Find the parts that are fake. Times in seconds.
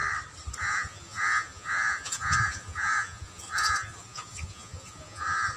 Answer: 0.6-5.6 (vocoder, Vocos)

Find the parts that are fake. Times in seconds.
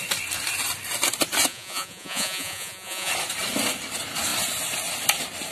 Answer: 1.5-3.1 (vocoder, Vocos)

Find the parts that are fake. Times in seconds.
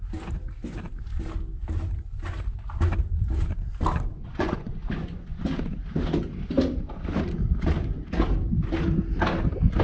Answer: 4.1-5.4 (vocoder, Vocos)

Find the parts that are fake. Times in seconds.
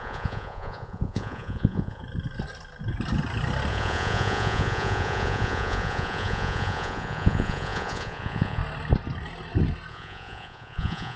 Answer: 0.0-2.0 (vocoder, Vocos); 3.7-8.6; 9.9-11.2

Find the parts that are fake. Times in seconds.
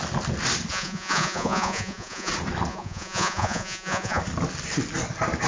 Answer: 0.7-2.3 (vocoder, Vocos); 2.7-4.2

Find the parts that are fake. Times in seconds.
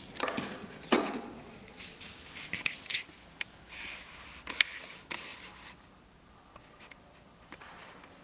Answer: 0.6-2.0 (vocoder, Vocos)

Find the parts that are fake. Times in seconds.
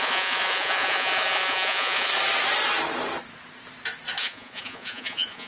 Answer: 0.0-2.1 (vocoder, Vocos); 4.2-5.5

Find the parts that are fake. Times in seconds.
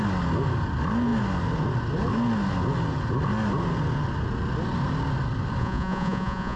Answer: 5.6-6.6 (vocoder, Vocos)